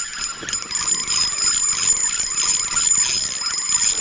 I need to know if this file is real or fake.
real